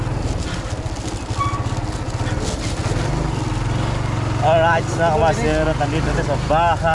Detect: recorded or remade recorded